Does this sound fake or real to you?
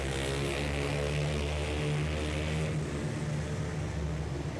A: real